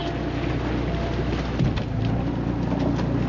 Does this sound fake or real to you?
real